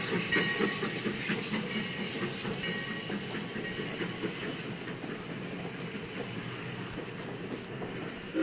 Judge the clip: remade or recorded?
recorded